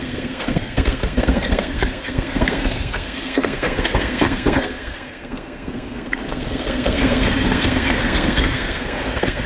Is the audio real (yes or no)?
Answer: no